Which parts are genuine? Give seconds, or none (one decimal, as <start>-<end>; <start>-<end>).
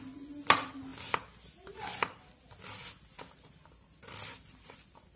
0.0-5.2